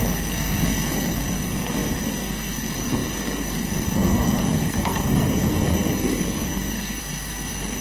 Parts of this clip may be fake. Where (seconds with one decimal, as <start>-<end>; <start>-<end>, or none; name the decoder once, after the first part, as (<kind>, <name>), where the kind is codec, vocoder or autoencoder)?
0.0-7.8 (codec, SNAC)